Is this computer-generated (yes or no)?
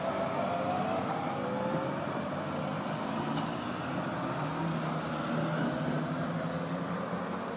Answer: no